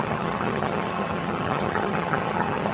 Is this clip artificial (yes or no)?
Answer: yes